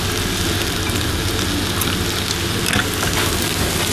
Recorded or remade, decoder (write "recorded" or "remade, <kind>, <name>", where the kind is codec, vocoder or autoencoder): recorded